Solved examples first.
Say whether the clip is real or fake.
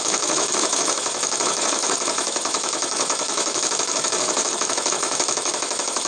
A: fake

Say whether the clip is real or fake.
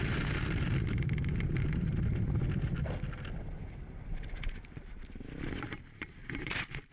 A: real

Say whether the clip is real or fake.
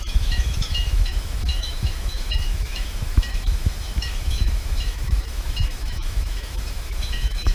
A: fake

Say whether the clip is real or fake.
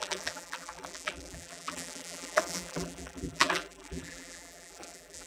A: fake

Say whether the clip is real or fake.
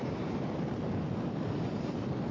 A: real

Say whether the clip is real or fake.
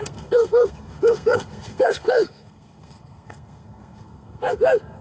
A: fake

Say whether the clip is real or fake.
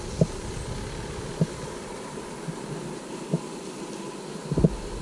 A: real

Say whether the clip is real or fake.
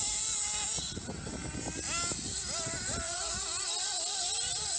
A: real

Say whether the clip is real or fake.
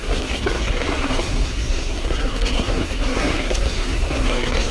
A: fake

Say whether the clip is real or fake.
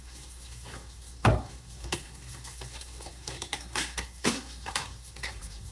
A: fake